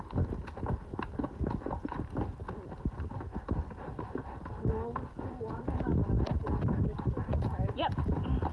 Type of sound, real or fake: real